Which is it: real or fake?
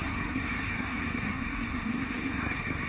fake